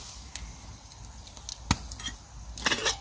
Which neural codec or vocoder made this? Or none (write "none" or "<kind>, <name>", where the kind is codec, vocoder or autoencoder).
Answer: none